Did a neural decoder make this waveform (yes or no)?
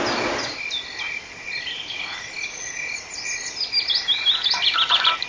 no